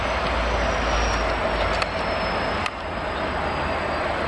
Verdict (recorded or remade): recorded